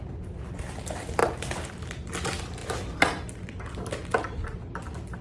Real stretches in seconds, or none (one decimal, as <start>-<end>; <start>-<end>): 0.0-2.6; 3.9-4.4

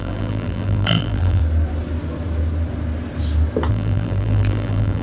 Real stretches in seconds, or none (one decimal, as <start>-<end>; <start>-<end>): 1.4-3.7

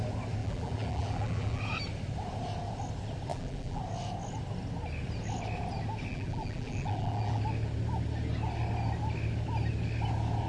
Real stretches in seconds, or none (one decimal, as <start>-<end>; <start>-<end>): 0.0-0.4; 1.6-3.3; 3.8-6.1; 7.4-10.5

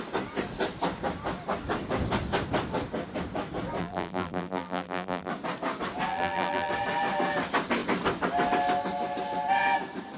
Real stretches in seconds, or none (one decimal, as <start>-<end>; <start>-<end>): 0.0-3.8; 5.3-6.1; 6.7-10.2

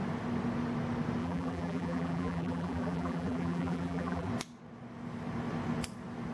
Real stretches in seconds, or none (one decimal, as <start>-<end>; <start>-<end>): 0.0-1.2; 4.3-6.3

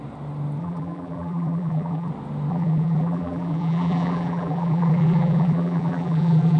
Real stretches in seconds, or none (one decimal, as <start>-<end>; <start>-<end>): 0.0-0.6; 2.1-2.5

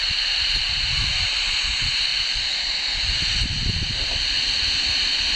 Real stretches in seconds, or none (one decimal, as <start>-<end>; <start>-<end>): 0.0-5.4

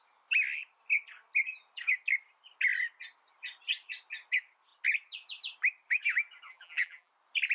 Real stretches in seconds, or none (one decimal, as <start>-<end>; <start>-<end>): 0.0-6.5; 7.1-7.5